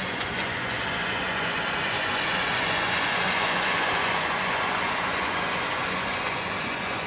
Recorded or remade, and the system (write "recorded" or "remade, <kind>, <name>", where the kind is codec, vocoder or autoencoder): remade, vocoder, Vocos